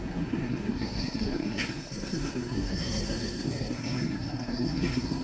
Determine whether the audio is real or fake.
fake